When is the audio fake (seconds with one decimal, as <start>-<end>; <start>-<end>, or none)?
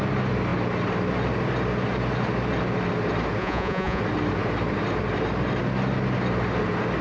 3.4-4.0